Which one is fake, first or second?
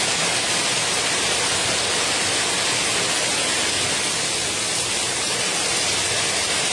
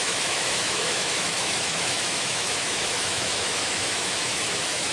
second